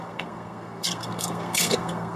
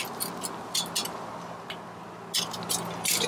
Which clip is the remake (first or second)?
first